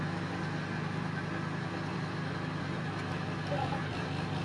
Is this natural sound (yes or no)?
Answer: yes